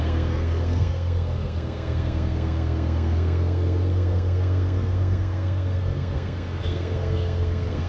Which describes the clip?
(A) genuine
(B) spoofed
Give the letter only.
B